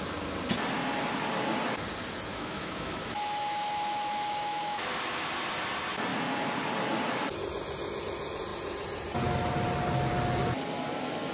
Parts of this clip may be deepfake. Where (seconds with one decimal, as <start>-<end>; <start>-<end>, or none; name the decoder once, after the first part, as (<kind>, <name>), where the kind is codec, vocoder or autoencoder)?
2.3-5.3 (autoencoder, DAC-VAE)